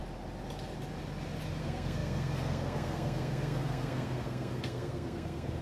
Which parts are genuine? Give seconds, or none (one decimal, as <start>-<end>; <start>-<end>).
0.0-1.6

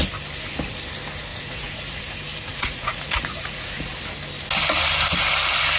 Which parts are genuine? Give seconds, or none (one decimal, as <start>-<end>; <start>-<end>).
0.0-1.3; 2.0-2.5; 3.9-5.8

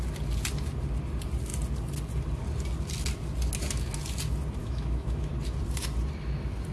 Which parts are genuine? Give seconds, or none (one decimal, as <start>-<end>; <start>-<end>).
0.0-4.6; 5.3-6.7

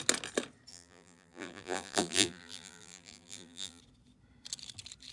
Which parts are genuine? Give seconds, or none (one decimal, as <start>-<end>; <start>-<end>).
0.0-0.7; 3.8-5.1

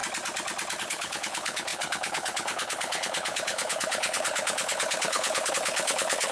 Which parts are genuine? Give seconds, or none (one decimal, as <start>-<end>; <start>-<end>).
0.0-0.8

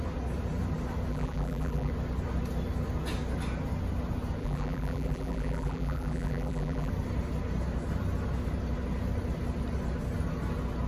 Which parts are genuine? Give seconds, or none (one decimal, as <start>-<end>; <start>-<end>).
0.0-1.1; 1.9-4.4; 6.9-10.9

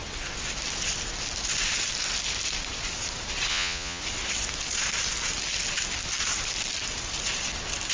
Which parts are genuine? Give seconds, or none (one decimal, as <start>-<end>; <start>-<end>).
0.0-3.5; 4.0-7.9